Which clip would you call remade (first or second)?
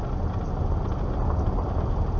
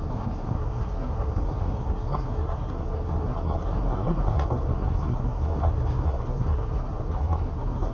second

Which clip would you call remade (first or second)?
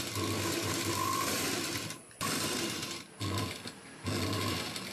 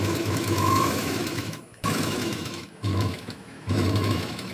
second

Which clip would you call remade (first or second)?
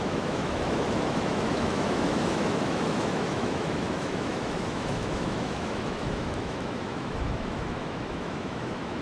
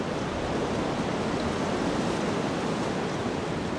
first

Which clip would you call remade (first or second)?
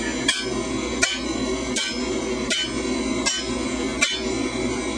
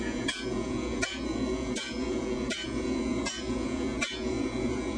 second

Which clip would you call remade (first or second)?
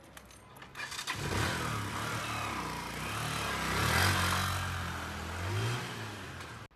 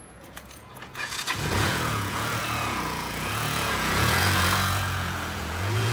second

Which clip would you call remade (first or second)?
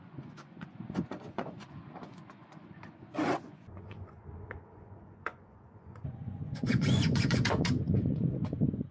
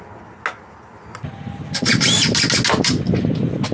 first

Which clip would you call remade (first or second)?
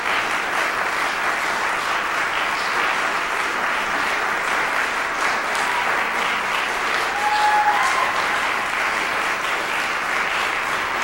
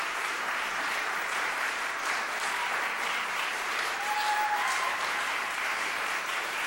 second